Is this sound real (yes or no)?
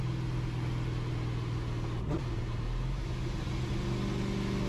yes